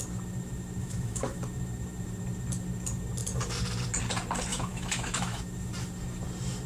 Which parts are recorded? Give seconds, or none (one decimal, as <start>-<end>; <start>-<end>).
0.0-0.8; 1.4-4.5; 5.4-6.7